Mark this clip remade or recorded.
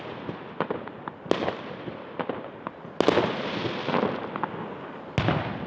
recorded